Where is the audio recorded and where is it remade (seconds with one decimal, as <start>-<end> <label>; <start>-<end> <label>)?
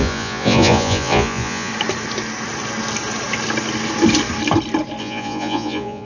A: 0.0-1.7 remade; 1.7-5.0 recorded; 5.0-6.0 remade